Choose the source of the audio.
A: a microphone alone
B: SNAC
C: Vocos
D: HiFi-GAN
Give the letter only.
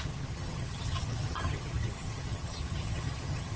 D